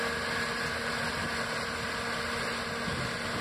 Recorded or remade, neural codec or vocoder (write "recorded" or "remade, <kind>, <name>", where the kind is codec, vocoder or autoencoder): recorded